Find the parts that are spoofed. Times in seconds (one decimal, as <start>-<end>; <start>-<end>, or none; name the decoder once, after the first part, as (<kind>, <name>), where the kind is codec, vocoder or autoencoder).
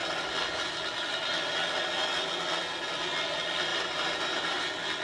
3.7-4.6 (vocoder, BigVGAN v2)